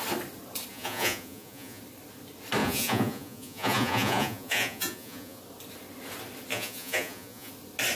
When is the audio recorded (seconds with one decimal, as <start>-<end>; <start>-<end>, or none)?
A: 0.0-0.7; 1.8-2.6; 5.4-6.5; 7.5-7.9